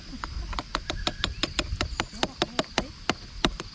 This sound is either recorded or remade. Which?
recorded